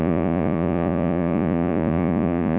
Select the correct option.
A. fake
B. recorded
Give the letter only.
A